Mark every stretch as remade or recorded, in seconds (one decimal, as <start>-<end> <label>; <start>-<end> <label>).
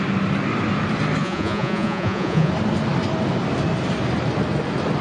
0.0-1.2 recorded; 1.2-2.5 remade; 2.5-5.0 recorded